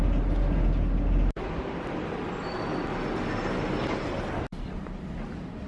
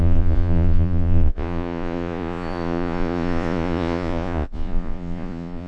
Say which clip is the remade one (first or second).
second